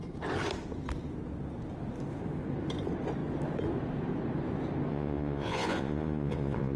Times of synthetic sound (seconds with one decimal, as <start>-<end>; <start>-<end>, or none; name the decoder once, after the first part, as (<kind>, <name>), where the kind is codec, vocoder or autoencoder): 4.9-6.8 (vocoder, Vocos)